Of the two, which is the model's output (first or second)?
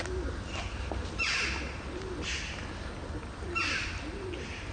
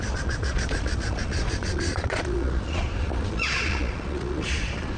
second